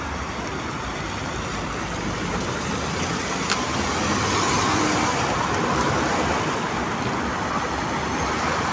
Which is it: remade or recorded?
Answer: recorded